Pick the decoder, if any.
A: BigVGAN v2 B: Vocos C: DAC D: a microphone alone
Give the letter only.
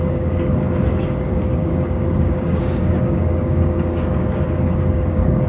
C